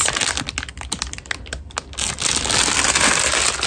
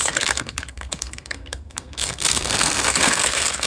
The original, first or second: first